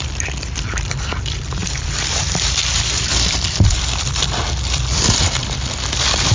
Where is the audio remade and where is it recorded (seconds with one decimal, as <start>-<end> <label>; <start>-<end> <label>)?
0.0-1.6 recorded; 1.6-5.4 remade; 5.4-6.3 recorded